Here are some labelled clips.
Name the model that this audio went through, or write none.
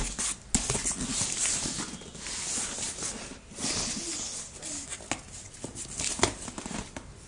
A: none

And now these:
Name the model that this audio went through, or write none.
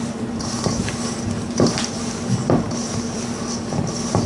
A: none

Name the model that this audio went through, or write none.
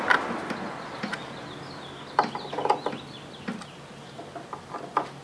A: none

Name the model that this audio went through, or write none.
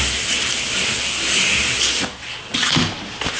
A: none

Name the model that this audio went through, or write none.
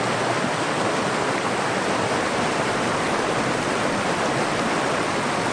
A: none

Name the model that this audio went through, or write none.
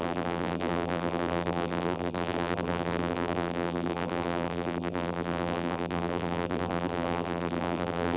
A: vocoder, BigVGAN v2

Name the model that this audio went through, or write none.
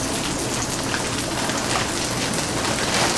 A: none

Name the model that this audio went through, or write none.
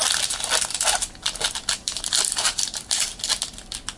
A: none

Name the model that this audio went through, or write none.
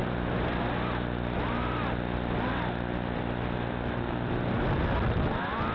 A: none